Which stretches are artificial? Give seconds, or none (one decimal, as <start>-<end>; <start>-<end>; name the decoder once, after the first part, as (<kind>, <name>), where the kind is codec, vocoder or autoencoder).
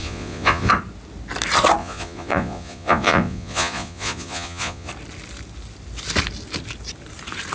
0.0-0.7 (vocoder, Vocos); 1.8-4.9